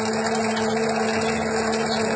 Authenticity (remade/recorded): recorded